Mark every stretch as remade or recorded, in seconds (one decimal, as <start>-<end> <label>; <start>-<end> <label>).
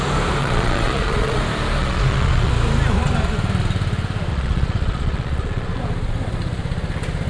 0.0-0.4 recorded; 0.4-1.4 remade; 1.4-1.8 recorded; 1.8-2.5 remade; 2.5-4.3 recorded; 4.3-5.8 remade; 5.8-7.3 recorded